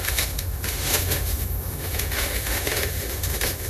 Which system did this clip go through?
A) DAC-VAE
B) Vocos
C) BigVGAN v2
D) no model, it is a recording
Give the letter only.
A